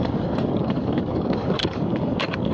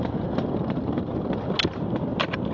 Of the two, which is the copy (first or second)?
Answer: first